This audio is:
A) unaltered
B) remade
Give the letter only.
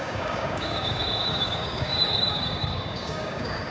B